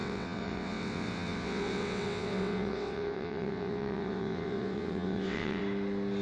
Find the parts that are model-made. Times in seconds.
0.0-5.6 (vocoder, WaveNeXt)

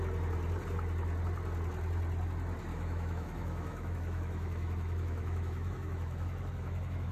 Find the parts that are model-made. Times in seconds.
2.7-7.1 (autoencoder, DAC-VAE)